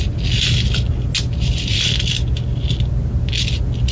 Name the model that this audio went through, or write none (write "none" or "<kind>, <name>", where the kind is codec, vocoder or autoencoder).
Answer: none